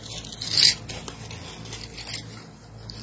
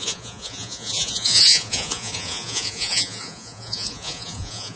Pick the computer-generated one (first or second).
second